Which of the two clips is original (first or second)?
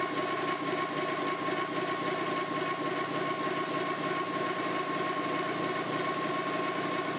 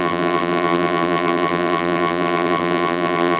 first